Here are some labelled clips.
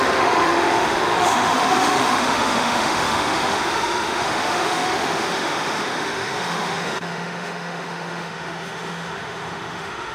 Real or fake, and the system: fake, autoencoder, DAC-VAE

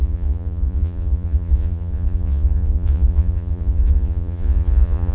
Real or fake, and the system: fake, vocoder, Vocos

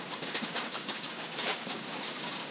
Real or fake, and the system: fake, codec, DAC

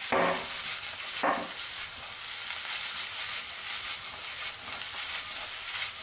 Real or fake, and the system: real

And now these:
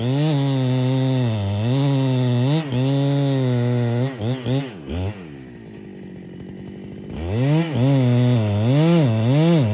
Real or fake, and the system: real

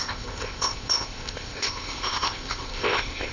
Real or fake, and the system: fake, codec, ZipCodec